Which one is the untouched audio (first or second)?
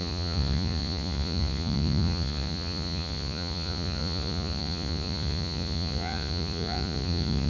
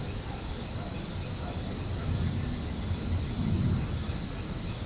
second